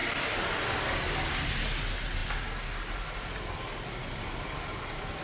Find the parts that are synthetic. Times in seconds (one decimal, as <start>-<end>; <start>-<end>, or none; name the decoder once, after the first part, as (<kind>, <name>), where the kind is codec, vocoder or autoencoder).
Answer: none

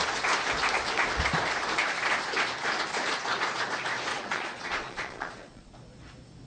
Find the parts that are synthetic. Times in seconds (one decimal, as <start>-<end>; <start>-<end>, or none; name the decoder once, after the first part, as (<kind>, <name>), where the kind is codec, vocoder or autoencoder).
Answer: 4.1-5.7 (vocoder, Vocos)

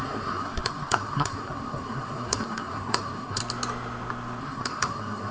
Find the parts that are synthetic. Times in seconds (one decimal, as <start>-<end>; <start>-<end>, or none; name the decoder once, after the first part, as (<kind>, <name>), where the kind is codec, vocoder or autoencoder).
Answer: 0.0-3.4 (codec, SNAC); 4.4-5.3